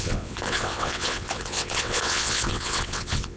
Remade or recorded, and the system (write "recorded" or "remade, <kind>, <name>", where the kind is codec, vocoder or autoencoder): remade, vocoder, WaveNeXt